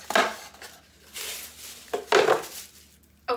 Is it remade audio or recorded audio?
recorded